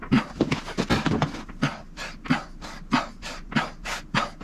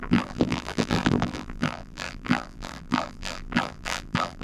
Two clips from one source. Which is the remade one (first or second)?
second